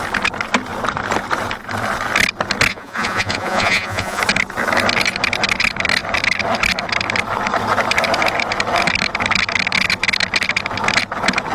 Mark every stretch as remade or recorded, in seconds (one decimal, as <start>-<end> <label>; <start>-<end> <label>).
0.0-2.7 recorded; 2.7-4.2 remade; 4.2-11.5 recorded